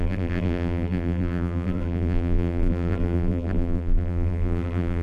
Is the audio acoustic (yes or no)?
no